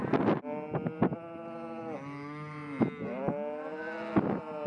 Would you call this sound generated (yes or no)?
no